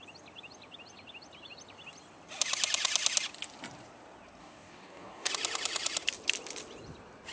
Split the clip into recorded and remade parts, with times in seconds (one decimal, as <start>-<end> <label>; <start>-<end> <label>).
0.0-4.4 recorded; 4.4-5.3 remade; 5.3-7.3 recorded

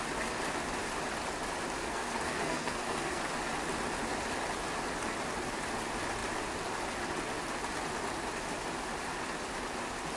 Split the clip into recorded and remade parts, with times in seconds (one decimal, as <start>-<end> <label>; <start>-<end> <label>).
0.0-1.8 recorded; 1.8-3.2 remade; 3.2-10.2 recorded

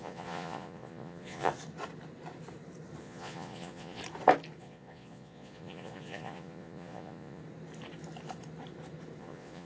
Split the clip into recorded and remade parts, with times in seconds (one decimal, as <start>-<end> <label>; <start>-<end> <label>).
0.0-1.5 remade; 1.5-3.0 recorded; 3.0-4.0 remade; 4.0-4.6 recorded; 4.6-7.4 remade; 7.4-9.2 recorded; 9.2-9.7 remade

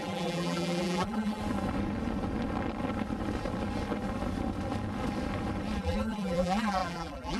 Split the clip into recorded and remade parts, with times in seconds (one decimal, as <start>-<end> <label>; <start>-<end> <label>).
0.0-1.4 remade; 1.4-5.8 recorded; 5.8-7.4 remade

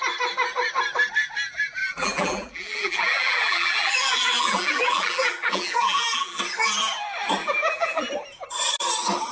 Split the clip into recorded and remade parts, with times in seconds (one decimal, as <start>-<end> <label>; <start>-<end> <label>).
0.0-1.8 recorded; 1.8-6.4 remade; 6.4-7.4 recorded; 7.4-8.1 remade; 8.1-9.3 recorded

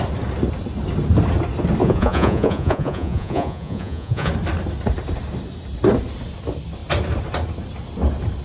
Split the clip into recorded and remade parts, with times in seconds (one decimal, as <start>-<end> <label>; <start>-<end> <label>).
0.0-1.8 recorded; 1.8-4.3 remade; 4.3-8.4 recorded

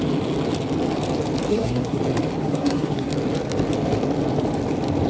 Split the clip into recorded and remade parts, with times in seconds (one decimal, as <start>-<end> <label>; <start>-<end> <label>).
0.0-1.5 recorded; 1.5-2.0 remade; 2.0-2.4 recorded; 2.4-3.1 remade; 3.1-5.1 recorded

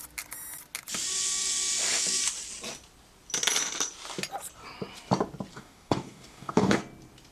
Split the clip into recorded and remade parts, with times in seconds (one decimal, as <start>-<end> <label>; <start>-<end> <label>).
0.0-5.5 recorded; 5.5-6.8 remade; 6.8-7.3 recorded